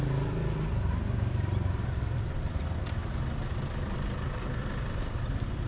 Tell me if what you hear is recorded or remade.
recorded